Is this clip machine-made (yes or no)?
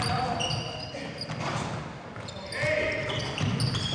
no